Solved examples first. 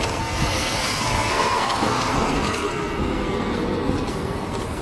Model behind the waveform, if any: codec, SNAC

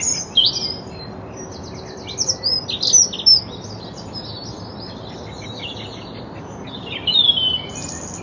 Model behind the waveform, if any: none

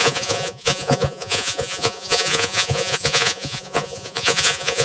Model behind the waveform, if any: vocoder, Vocos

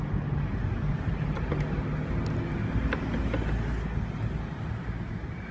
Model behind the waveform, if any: none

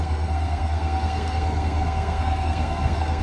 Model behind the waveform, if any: codec, SNAC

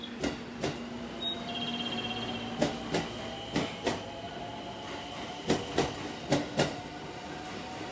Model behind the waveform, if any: none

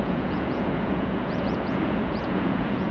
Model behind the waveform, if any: vocoder, Vocos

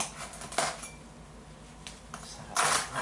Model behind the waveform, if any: none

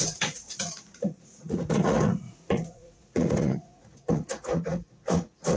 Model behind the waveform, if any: vocoder, Vocos